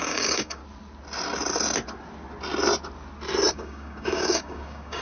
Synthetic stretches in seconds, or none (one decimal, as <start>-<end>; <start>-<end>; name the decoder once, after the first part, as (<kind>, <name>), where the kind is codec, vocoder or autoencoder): 0.0-0.6 (codec, DAC); 3.5-5.0